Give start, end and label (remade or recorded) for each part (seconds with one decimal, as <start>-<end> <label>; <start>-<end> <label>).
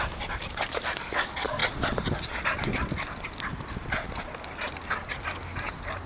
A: 0.0-6.1 recorded